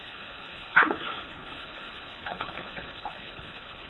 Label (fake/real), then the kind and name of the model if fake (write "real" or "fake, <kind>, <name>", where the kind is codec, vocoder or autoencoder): fake, codec, HILCodec